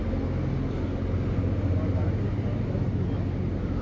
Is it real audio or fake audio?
real